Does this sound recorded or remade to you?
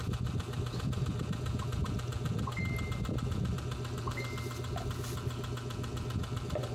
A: recorded